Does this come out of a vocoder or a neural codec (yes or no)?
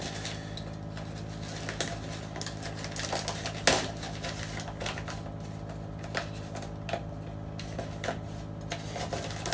no